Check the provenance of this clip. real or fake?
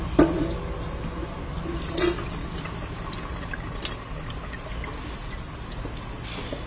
real